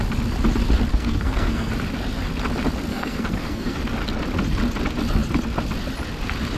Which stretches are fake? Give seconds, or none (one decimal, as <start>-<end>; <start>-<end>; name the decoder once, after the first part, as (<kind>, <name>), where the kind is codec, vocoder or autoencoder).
0.9-1.7 (codec, SNAC); 2.9-3.8

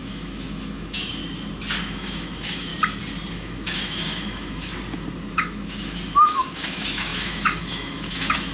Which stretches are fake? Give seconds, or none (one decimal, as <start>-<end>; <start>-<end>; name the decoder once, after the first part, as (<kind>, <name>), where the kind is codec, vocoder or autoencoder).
0.0-1.2 (autoencoder, DAC-VAE); 1.8-2.7; 3.3-4.7; 5.3-8.5

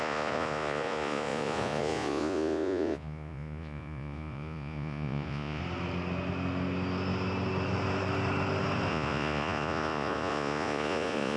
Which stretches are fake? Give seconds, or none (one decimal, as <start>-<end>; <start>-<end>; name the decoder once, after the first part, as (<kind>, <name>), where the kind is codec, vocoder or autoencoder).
0.0-5.6 (vocoder, Vocos); 8.9-11.4

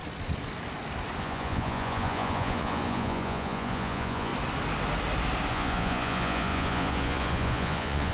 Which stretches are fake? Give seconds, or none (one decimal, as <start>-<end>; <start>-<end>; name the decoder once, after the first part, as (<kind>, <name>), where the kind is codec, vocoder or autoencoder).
1.2-4.3 (vocoder, Vocos); 5.5-8.1